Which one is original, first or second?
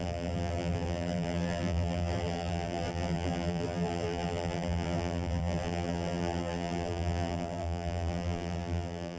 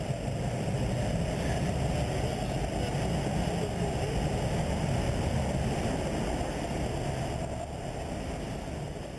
second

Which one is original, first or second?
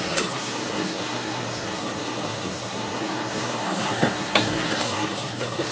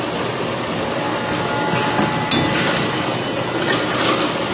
second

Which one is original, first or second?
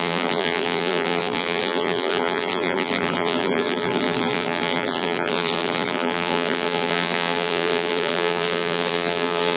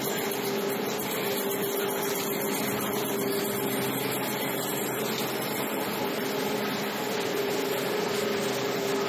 second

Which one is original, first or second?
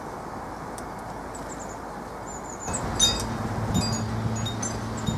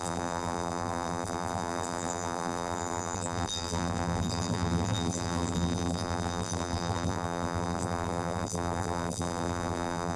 first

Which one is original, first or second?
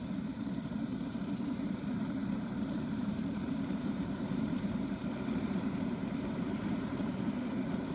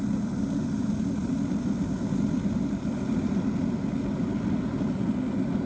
second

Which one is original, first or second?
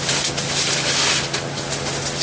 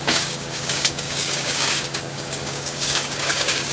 first